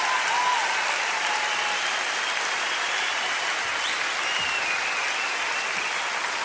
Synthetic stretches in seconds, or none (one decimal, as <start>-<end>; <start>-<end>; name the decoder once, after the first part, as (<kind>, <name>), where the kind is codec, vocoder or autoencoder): none